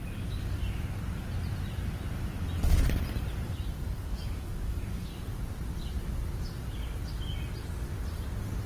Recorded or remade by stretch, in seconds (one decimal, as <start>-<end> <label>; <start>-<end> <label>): 0.0-0.6 remade; 0.6-3.8 recorded; 3.8-5.1 remade; 5.1-8.7 recorded